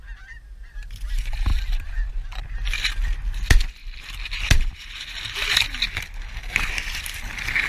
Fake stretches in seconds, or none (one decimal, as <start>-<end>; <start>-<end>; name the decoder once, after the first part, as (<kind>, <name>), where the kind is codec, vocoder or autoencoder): none